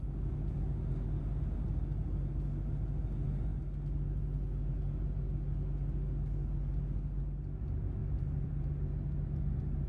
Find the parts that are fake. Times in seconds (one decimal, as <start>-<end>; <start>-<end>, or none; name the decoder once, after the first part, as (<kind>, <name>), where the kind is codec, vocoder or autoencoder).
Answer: 8.0-8.5 (vocoder, BigVGAN v2)